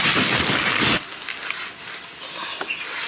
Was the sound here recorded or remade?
recorded